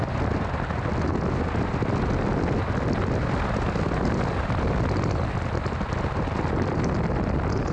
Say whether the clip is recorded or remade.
recorded